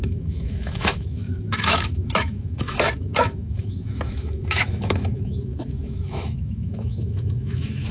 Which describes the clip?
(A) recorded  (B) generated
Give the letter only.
B